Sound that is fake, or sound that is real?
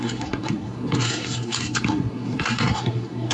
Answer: fake